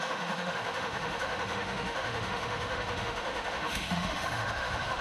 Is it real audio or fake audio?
fake